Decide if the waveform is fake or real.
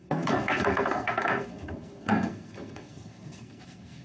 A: fake